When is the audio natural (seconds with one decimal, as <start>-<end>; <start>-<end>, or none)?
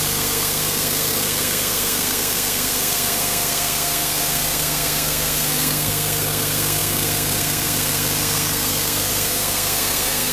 none